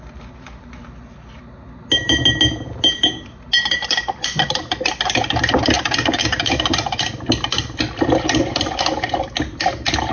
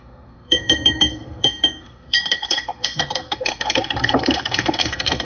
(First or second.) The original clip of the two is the first